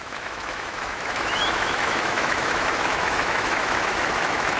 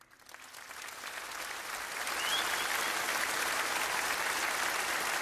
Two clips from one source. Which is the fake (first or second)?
first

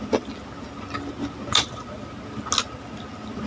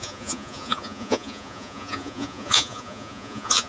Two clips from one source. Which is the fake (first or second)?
second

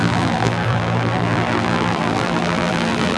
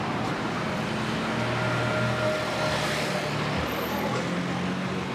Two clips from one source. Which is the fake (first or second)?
first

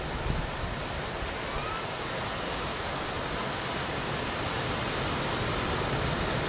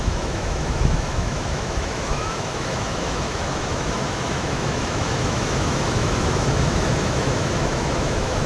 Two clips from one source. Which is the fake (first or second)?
second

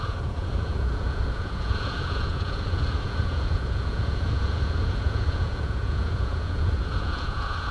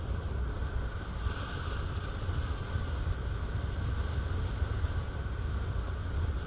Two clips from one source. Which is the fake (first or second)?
first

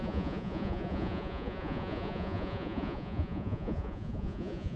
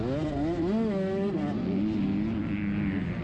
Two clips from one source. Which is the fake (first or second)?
first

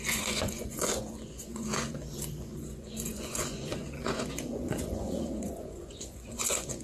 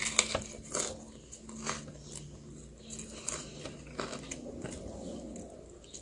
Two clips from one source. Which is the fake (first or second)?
first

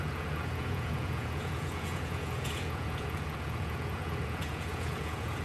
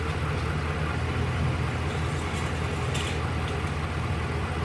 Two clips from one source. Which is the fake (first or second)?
first